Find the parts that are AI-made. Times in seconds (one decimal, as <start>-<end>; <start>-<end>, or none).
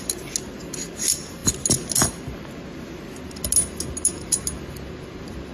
none